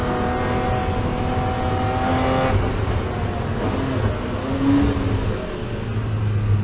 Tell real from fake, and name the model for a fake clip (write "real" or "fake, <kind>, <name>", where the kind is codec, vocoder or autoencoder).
real